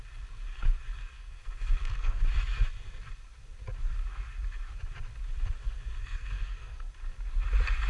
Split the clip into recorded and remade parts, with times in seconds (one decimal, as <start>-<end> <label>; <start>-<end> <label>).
0.0-1.0 recorded; 1.0-2.2 remade; 2.2-6.0 recorded; 6.0-6.9 remade; 6.9-7.9 recorded